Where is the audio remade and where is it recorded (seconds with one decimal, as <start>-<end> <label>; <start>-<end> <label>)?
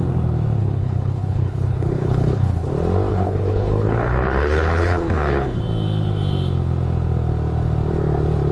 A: 0.0-0.6 recorded; 0.6-2.7 remade; 2.7-3.1 recorded; 3.1-5.6 remade; 5.6-8.5 recorded